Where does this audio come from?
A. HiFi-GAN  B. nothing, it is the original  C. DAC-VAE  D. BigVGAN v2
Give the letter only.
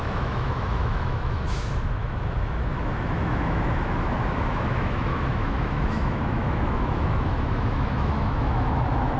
C